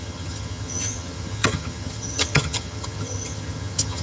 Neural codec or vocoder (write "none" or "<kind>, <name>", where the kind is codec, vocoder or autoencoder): vocoder, HiFi-GAN